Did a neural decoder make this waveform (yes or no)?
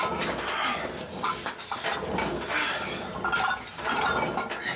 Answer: no